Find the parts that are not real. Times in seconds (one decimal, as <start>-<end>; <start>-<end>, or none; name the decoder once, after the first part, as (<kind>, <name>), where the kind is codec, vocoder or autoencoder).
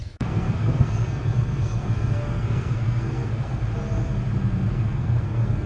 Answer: 0.0-3.6 (codec, SNAC); 4.7-5.7